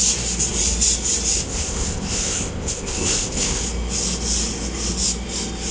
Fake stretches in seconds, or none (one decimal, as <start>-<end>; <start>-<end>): 1.4-3.6